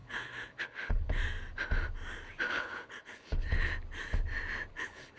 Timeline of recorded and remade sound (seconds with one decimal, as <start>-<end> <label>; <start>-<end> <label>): 0.0-1.2 remade; 1.2-2.5 recorded; 2.5-3.7 remade; 3.7-4.7 recorded; 4.7-5.2 remade

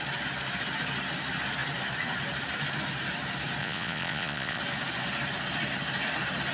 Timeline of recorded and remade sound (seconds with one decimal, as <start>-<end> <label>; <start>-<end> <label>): 0.0-3.6 recorded; 3.6-4.6 remade; 4.6-6.5 recorded